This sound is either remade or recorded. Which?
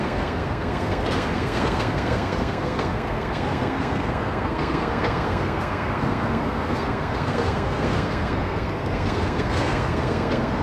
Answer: remade